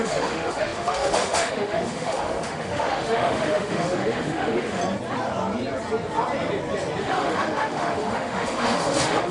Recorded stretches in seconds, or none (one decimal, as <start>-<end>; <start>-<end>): 4.8-7.0